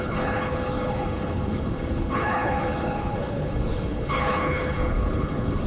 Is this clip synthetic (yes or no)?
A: yes